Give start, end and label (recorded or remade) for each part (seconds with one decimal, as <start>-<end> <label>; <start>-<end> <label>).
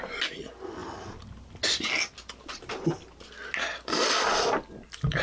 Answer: 0.0-4.0 recorded; 4.0-4.5 remade; 4.5-5.2 recorded